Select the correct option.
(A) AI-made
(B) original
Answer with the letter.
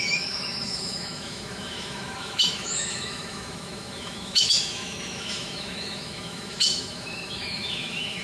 A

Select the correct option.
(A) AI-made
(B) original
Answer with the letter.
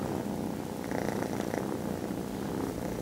B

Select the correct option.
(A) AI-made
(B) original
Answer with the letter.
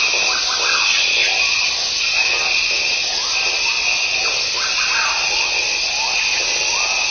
B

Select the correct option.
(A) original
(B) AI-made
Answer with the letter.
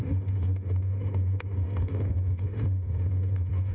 B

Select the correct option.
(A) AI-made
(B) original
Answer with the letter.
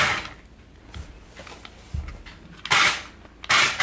B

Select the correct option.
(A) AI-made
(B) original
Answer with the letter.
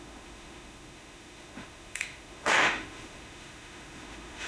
A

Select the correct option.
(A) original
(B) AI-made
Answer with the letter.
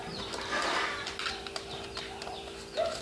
A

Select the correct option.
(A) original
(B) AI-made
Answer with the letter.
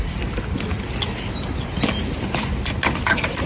A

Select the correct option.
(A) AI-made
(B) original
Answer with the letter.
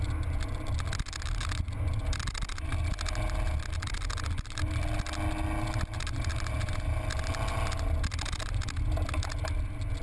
B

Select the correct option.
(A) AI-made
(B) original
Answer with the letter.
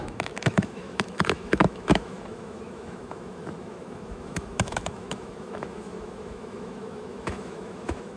A